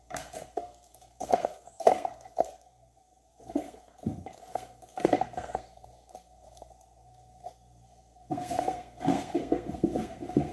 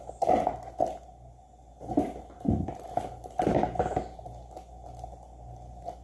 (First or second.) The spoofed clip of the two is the first